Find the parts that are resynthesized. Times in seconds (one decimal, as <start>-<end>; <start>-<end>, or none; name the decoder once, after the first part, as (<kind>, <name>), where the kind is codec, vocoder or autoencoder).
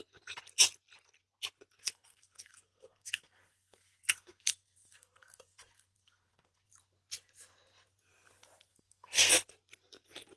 1.8-6.7 (codec, SNAC); 8.7-9.3